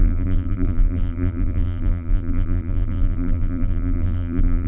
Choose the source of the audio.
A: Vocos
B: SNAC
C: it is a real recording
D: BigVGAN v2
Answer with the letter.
D